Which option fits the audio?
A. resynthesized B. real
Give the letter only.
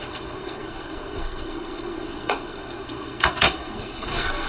A